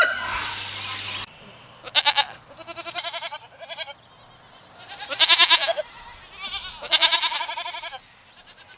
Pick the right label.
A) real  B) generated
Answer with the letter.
A